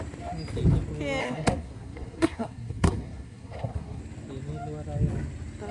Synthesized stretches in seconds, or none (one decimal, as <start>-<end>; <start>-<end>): 1.2-4.0